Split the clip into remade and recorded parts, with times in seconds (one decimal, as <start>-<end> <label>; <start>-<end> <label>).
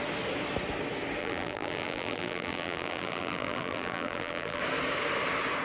0.0-1.2 recorded; 1.2-4.6 remade; 4.6-5.6 recorded